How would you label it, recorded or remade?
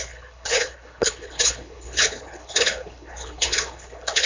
remade